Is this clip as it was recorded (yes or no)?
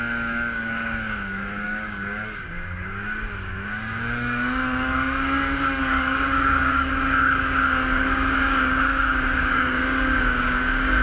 no